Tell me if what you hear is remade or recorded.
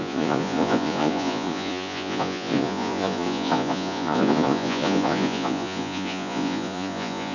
remade